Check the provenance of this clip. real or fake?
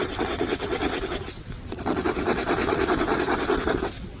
fake